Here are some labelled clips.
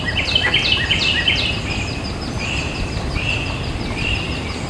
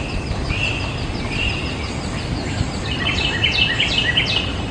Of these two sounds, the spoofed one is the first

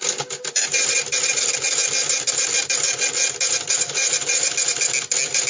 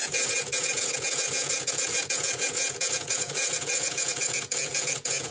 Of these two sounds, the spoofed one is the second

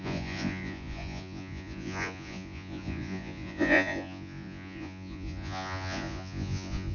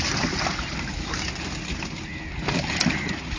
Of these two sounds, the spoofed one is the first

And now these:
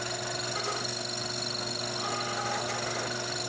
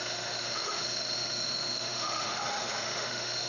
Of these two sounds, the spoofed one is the second